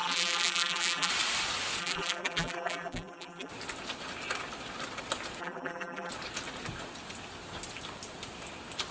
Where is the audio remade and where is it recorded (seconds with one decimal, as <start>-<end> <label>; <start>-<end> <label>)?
0.0-1.1 remade; 1.1-1.8 recorded; 1.8-3.5 remade; 3.5-5.4 recorded; 5.4-6.1 remade; 6.1-8.9 recorded